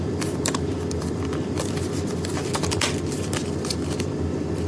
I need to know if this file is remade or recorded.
recorded